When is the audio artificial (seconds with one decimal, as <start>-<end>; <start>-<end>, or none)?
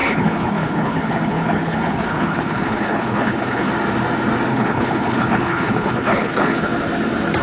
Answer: 0.0-3.7; 4.5-6.7